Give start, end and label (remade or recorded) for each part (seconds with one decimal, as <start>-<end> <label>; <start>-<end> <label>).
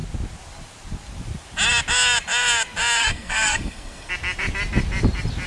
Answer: 0.0-3.0 recorded; 3.0-4.1 remade; 4.1-5.5 recorded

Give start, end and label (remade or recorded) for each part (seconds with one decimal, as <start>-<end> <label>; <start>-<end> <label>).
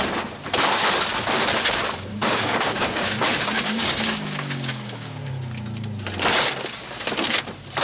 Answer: 0.0-2.1 recorded; 2.1-5.3 remade; 5.3-7.8 recorded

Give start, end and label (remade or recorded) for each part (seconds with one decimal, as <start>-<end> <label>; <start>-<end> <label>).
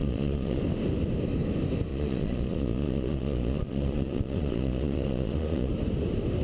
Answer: 0.0-0.6 remade; 0.6-1.9 recorded; 1.9-5.7 remade; 5.7-6.4 recorded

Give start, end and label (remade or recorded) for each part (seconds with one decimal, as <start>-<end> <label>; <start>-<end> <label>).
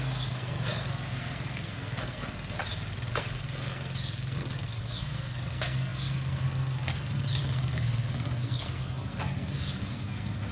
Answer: 0.0-2.6 remade; 2.6-3.1 recorded; 3.1-10.5 remade